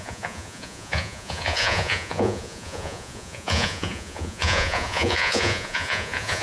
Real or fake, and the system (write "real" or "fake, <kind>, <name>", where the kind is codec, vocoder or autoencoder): fake, vocoder, Vocos